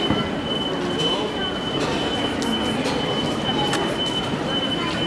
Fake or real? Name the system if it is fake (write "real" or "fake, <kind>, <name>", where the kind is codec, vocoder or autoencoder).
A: real